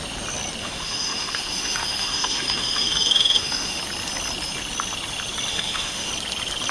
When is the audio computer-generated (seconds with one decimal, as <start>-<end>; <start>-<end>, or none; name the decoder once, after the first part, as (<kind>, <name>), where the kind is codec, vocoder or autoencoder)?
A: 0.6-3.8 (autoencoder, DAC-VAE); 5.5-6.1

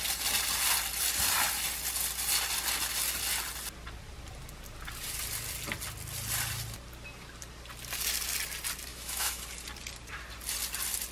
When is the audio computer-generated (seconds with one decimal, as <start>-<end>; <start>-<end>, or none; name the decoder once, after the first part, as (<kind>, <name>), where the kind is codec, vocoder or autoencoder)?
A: 8.9-9.4 (autoencoder, DAC-VAE)

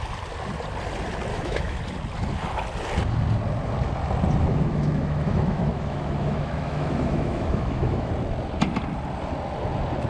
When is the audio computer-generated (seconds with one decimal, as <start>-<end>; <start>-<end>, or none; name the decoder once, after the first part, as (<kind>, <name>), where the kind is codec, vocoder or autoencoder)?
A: 1.3-1.8 (autoencoder, DAC-VAE); 4.4-8.1

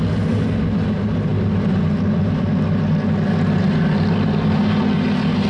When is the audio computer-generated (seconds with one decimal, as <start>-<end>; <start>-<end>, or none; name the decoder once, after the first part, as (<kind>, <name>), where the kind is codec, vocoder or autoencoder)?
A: none

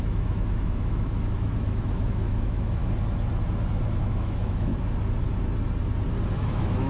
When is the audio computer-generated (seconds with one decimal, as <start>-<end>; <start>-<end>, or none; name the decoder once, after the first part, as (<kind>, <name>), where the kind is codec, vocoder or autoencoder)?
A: 0.0-2.8 (autoencoder, DAC-VAE); 4.0-4.7; 6.3-6.9

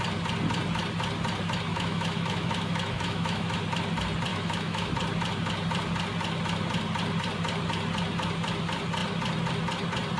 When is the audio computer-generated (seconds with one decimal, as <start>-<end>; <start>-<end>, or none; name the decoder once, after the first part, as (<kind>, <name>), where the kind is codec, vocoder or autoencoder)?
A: 1.7-3.6 (autoencoder, DAC-VAE); 4.3-4.9

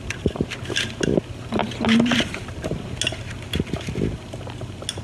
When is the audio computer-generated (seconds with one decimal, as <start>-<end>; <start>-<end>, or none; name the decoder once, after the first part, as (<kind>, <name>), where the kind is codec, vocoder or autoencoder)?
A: none

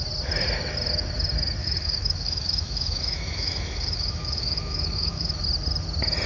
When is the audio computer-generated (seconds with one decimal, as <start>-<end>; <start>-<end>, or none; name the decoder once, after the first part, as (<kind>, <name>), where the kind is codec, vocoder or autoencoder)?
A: 1.6-5.4 (autoencoder, DAC-VAE)